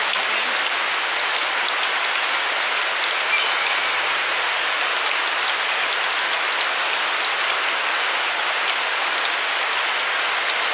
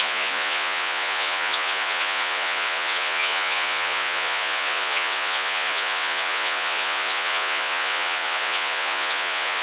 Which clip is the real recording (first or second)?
first